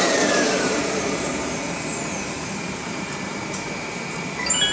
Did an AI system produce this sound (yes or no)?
yes